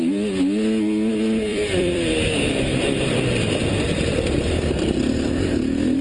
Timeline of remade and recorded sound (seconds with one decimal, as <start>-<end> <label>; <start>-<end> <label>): 0.0-1.5 recorded; 1.5-5.1 remade; 5.1-6.0 recorded